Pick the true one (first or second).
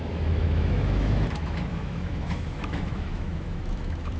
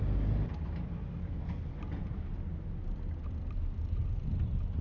second